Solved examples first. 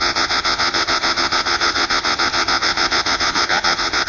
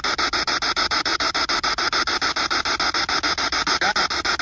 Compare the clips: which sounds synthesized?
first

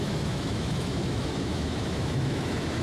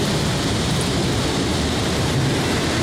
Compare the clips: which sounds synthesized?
first